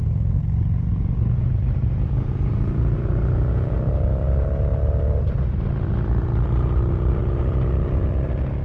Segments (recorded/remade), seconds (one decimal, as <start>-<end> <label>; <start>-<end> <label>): 0.0-0.9 recorded; 0.9-3.9 remade; 3.9-8.6 recorded